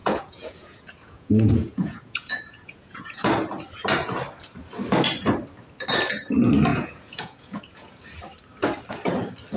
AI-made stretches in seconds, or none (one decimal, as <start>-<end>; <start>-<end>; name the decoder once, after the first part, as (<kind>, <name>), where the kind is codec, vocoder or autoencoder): 0.0-3.3 (vocoder, Vocos); 6.7-8.0